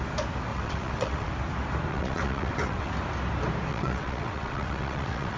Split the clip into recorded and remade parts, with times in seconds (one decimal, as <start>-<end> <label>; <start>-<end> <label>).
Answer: 0.0-0.5 recorded; 0.5-1.3 remade; 1.3-1.9 recorded; 1.9-2.9 remade; 2.9-3.7 recorded; 3.7-5.4 remade